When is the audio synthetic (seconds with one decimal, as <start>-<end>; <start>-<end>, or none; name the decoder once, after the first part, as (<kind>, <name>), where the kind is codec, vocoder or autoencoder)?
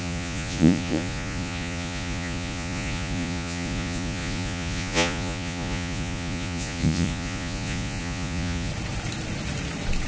0.0-8.7 (vocoder, Vocos)